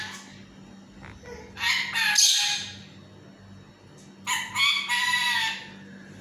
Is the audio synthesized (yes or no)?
no